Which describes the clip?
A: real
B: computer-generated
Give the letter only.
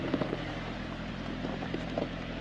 B